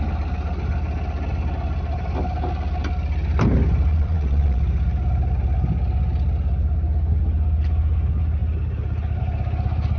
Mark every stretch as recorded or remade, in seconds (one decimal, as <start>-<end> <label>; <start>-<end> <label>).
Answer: 0.0-3.9 recorded; 3.9-4.6 remade; 4.6-10.0 recorded